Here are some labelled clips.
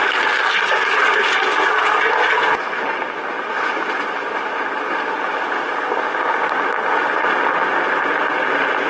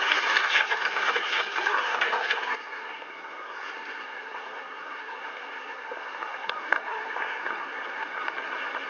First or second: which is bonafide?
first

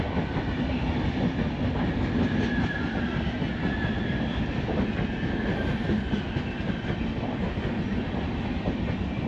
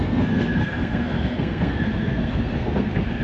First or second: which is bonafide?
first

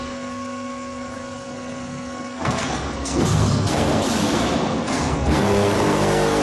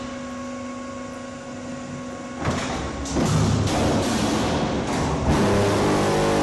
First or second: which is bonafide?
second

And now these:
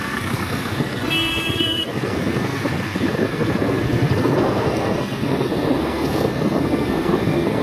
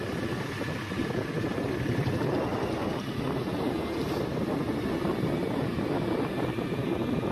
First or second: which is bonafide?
second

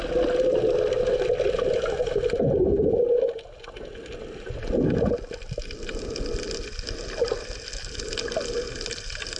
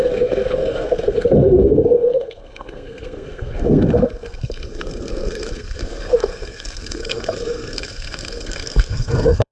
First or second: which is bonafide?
first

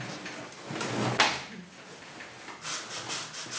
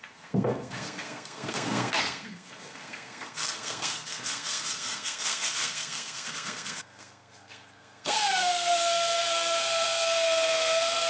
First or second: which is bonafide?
first